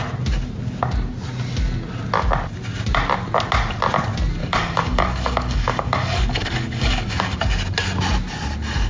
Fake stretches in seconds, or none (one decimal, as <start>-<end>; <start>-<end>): 4.4-7.4